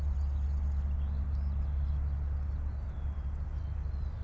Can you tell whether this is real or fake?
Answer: real